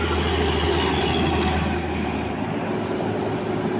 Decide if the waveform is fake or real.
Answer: real